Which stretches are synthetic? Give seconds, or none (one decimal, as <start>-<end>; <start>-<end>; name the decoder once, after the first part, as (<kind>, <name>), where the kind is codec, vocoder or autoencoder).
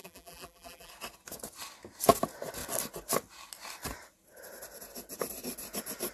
0.0-0.9 (vocoder, BigVGAN v2)